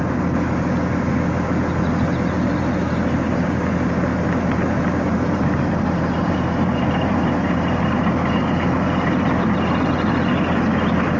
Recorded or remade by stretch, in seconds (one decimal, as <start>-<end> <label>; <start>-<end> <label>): 0.0-11.2 recorded